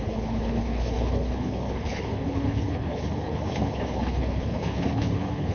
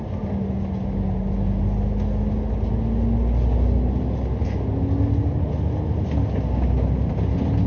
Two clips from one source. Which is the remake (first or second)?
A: first